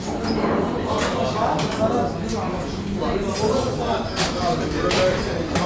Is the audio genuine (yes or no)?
yes